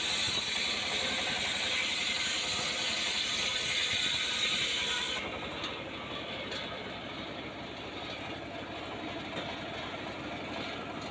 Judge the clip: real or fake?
real